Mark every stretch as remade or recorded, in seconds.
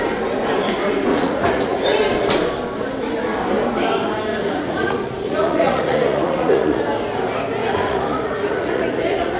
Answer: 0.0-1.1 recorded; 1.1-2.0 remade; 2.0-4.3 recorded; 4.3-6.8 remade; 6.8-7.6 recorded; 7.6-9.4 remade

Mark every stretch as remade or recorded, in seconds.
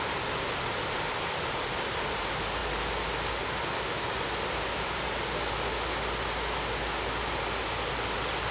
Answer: 0.0-8.5 recorded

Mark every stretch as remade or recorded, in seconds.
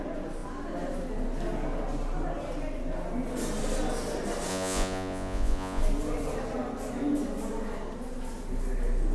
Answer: 0.0-4.5 recorded; 4.5-5.8 remade; 5.8-9.1 recorded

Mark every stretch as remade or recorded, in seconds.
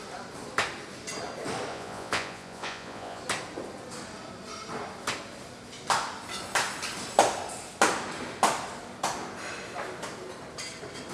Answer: 0.0-1.7 recorded; 1.7-3.2 remade; 3.2-11.1 recorded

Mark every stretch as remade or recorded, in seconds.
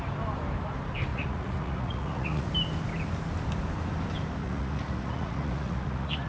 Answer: 0.0-1.1 recorded; 1.1-2.5 remade; 2.5-4.4 recorded; 4.4-6.3 remade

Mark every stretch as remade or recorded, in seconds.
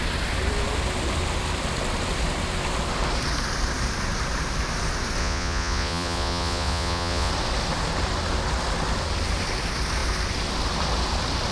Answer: 0.0-5.2 recorded; 5.2-7.3 remade; 7.3-11.5 recorded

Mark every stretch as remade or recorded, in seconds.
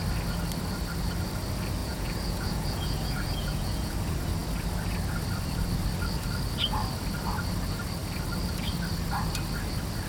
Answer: 0.0-1.8 recorded; 1.8-3.9 remade; 3.9-10.1 recorded